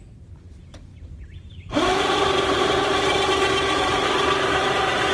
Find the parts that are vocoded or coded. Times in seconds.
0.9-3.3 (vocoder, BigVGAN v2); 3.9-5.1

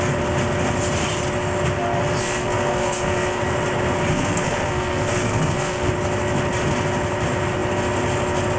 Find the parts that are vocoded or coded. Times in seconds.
2.2-3.4 (codec, SNAC); 4.1-5.9

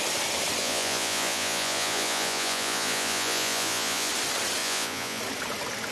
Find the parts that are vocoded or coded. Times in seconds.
0.6-4.1 (vocoder, Vocos); 4.6-5.2